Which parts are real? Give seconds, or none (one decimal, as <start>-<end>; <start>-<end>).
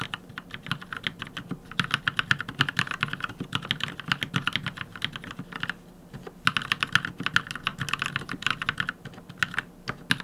0.0-10.2